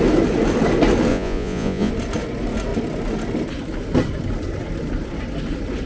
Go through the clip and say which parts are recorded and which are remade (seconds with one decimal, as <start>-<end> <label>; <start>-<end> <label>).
0.0-1.1 recorded; 1.1-1.9 remade; 1.9-5.9 recorded